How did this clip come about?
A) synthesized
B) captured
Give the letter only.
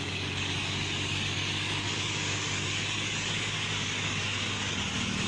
A